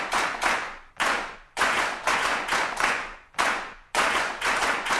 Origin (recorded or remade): remade